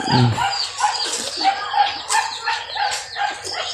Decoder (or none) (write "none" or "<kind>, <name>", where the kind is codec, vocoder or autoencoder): none